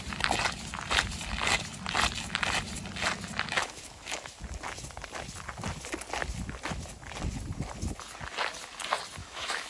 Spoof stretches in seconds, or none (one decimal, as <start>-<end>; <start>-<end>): 3.6-4.4; 9.2-9.7